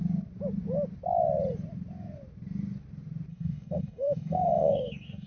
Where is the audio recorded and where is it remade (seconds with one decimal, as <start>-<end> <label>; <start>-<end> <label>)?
0.0-3.3 recorded; 3.3-5.3 remade